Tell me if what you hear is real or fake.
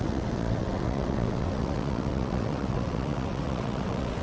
fake